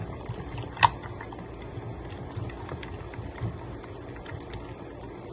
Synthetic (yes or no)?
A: no